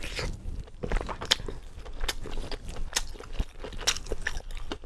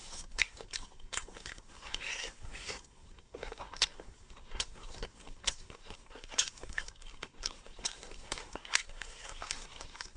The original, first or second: first